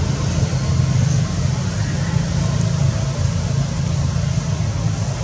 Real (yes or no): yes